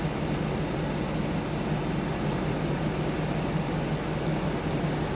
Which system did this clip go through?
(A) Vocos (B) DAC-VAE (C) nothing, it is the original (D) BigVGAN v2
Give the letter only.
C